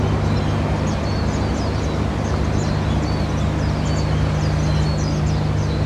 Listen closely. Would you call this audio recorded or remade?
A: recorded